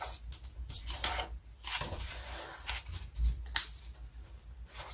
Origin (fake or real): real